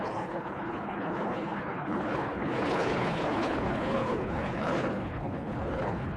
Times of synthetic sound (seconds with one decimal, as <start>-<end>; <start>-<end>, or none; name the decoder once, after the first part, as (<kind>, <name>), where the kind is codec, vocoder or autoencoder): 0.0-6.2 (codec, HILCodec)